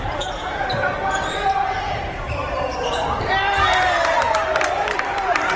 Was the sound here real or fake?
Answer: fake